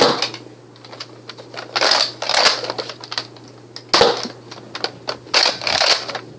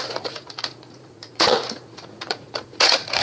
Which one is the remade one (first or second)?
second